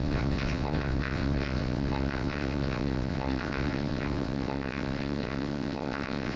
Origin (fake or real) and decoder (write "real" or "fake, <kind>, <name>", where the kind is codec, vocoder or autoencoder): fake, vocoder, WaveNeXt